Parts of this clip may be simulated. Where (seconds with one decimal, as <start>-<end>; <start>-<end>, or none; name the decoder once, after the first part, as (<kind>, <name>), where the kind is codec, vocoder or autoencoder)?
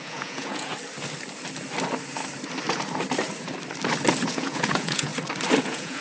0.0-0.7 (vocoder, Vocos); 4.3-5.1; 5.6-6.0